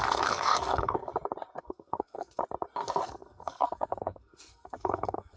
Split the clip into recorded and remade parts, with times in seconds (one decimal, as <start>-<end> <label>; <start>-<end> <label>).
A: 0.0-1.1 remade; 1.1-1.6 recorded; 1.6-2.4 remade; 2.4-3.0 recorded; 3.0-5.4 remade